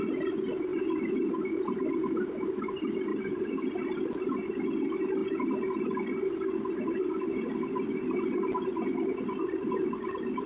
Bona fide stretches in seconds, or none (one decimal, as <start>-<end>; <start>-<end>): 0.0-3.1; 3.7-10.5